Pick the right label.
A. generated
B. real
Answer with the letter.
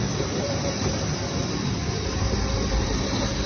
B